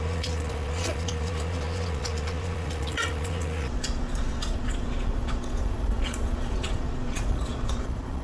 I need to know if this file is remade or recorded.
remade